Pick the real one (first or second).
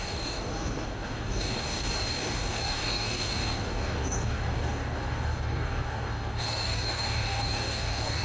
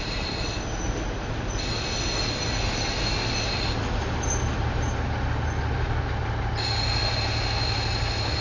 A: second